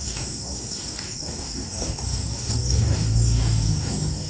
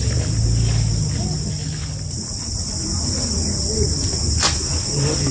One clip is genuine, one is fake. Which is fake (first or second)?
first